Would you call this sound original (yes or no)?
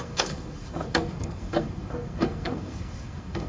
no